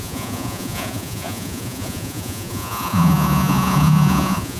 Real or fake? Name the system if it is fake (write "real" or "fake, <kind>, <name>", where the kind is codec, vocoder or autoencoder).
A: fake, vocoder, Vocos